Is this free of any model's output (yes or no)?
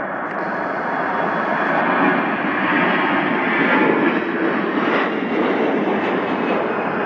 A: yes